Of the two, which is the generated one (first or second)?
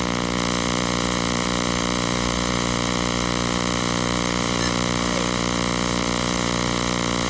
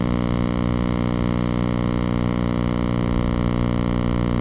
first